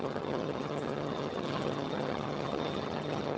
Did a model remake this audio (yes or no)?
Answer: yes